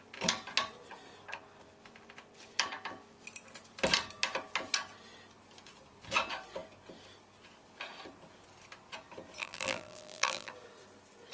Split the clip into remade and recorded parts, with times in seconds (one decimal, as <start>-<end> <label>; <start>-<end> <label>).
0.0-9.4 recorded; 9.4-10.5 remade; 10.5-11.3 recorded